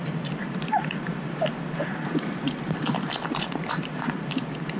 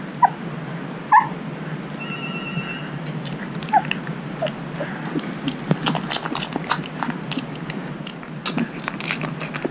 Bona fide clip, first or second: second